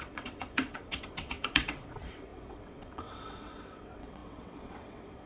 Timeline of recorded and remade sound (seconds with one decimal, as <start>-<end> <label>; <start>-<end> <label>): 0.0-5.3 remade

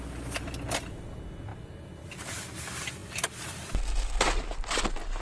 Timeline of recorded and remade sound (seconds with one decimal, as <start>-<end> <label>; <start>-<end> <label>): 0.0-5.2 recorded

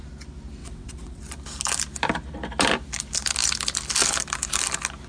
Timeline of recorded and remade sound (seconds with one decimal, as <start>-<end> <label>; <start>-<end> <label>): 0.0-0.6 recorded; 0.6-1.2 remade; 1.2-5.1 recorded

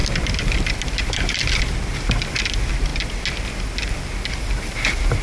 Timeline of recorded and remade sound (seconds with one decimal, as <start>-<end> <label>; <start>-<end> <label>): 0.0-5.2 recorded

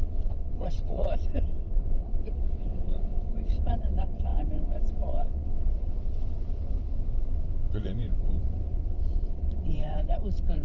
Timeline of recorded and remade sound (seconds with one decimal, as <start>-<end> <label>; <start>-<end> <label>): 0.0-10.6 remade

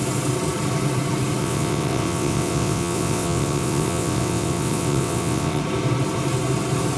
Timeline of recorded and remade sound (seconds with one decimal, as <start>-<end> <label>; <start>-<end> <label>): 0.0-1.4 recorded; 1.4-5.6 remade; 5.6-7.0 recorded

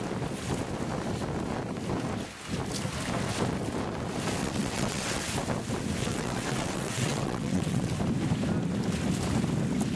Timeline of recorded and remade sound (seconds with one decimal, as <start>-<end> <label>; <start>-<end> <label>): 0.0-4.4 recorded; 4.4-5.2 remade; 5.2-6.0 recorded; 6.0-7.9 remade; 7.9-10.0 recorded